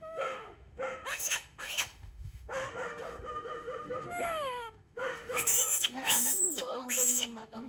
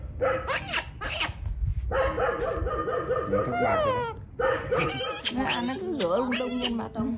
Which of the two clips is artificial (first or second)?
first